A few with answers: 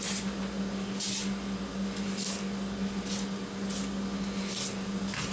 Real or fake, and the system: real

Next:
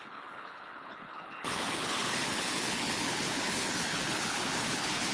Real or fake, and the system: fake, codec, HILCodec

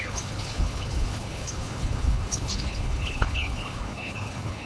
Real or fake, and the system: fake, codec, HILCodec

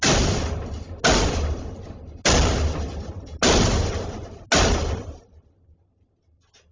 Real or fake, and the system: real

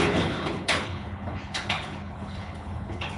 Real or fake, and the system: fake, codec, HILCodec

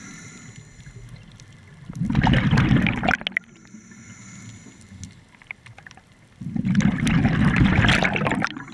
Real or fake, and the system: real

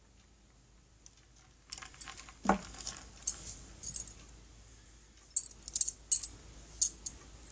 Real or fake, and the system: real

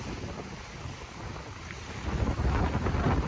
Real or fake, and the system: real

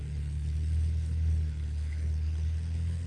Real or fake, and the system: fake, codec, HILCodec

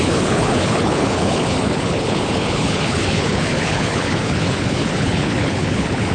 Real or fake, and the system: fake, codec, HILCodec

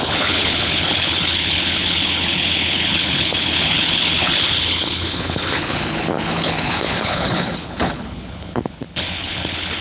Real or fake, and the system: fake, codec, HILCodec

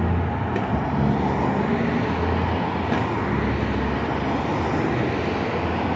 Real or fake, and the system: real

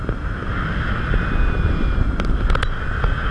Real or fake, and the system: real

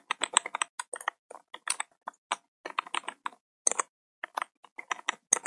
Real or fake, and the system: real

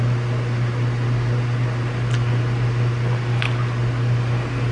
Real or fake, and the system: real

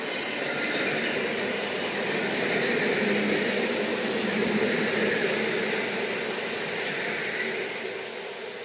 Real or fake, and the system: real